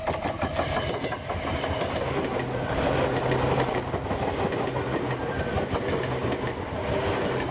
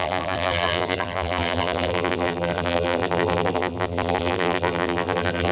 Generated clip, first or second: second